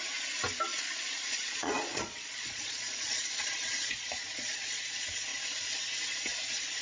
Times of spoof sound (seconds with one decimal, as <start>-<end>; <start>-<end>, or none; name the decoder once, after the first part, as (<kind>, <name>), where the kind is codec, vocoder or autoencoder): 0.7-4.8 (vocoder, Vocos); 5.3-5.8